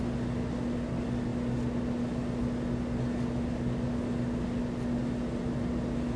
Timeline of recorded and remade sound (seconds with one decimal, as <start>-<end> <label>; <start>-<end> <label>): 0.0-6.2 recorded